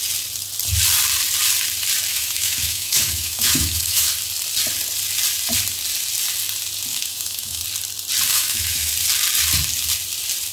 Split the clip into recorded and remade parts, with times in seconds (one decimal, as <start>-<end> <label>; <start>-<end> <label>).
0.0-2.1 recorded; 2.1-4.1 remade; 4.1-6.9 recorded; 6.9-7.6 remade; 7.6-8.3 recorded; 8.3-8.9 remade; 8.9-10.5 recorded